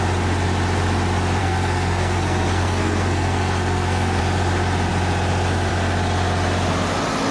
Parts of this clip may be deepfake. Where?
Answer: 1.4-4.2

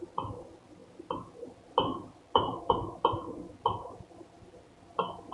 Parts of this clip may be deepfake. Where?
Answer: none

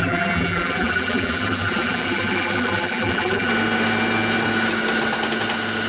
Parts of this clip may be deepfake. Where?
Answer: 0.0-3.5

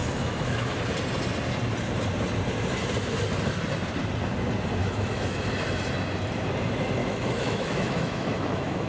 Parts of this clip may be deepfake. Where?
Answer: 0.0-0.7; 4.8-5.4; 7.0-8.9

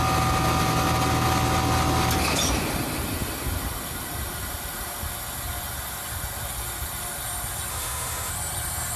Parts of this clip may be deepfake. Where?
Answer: 7.7-8.3

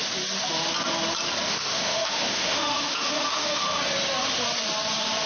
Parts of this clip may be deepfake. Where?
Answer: 1.5-3.6